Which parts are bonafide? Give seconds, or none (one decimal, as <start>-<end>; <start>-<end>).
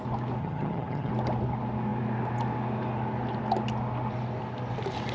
0.0-0.4; 1.1-5.1